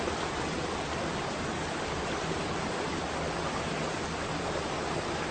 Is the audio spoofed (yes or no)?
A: no